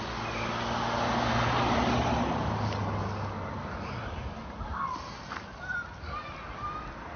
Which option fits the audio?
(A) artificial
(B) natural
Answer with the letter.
B